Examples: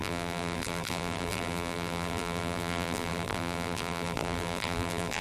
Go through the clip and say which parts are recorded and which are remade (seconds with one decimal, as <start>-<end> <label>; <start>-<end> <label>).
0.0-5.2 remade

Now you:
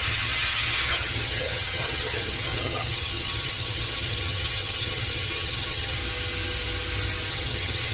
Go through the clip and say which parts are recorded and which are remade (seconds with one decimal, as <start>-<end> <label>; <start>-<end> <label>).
0.0-6.0 remade; 6.0-7.3 recorded; 7.3-7.9 remade

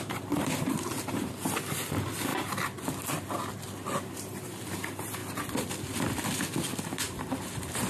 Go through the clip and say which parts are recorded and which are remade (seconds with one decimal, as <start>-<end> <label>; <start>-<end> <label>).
0.0-2.3 remade; 2.3-4.0 recorded; 4.0-5.2 remade; 5.2-6.8 recorded; 6.8-7.9 remade